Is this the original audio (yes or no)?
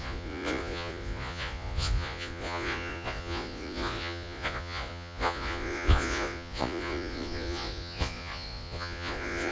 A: no